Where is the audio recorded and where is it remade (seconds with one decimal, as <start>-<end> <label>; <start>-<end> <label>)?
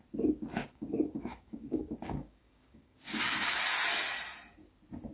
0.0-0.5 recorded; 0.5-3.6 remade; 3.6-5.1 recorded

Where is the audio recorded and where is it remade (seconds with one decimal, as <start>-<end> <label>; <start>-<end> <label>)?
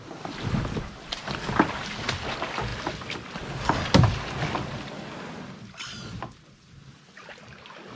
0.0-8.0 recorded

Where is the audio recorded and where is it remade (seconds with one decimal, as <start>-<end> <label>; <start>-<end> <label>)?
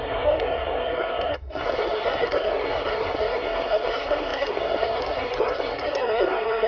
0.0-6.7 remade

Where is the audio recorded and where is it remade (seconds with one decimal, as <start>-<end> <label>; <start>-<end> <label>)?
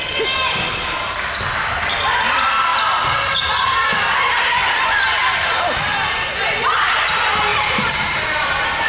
0.0-7.5 recorded; 7.5-8.9 remade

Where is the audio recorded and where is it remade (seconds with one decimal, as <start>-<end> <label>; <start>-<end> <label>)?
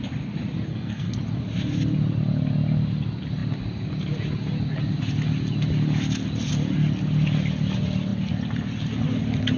0.0-0.7 recorded; 0.7-1.2 remade; 1.2-9.6 recorded